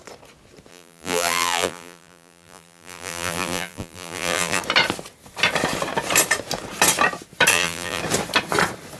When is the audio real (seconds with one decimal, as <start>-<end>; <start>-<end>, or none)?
0.0-0.7; 4.6-7.5; 8.0-9.0